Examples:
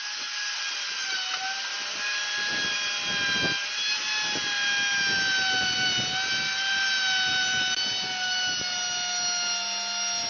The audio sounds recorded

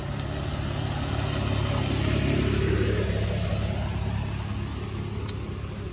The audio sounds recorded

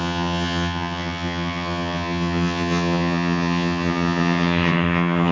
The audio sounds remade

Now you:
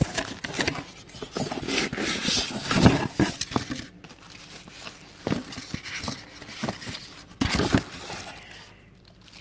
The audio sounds recorded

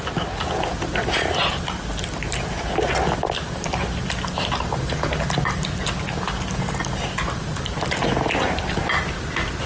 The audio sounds recorded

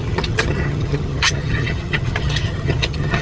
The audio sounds remade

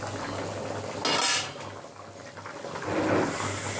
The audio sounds recorded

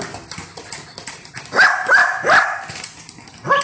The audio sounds recorded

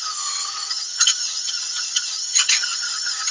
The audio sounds remade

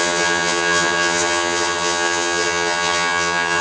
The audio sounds remade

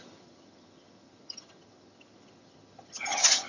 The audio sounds remade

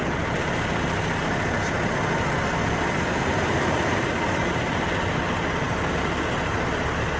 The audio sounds recorded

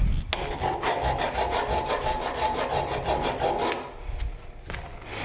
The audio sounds recorded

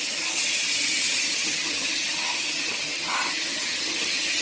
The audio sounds remade